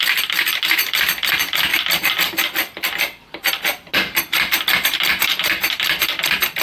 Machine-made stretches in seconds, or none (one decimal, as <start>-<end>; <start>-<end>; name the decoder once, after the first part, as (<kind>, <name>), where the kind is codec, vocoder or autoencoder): 0.0-3.9 (vocoder, BigVGAN v2); 5.1-6.6